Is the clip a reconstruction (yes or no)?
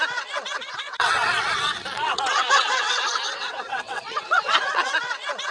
yes